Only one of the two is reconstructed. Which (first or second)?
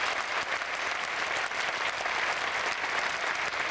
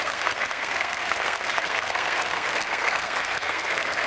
second